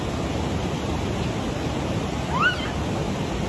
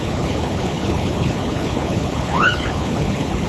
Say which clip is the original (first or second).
first